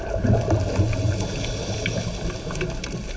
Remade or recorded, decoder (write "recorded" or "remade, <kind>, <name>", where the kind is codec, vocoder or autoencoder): recorded